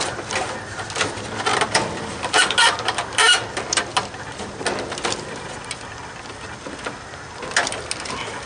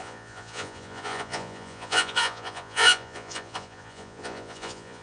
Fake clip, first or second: second